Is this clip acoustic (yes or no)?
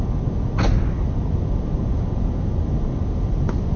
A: yes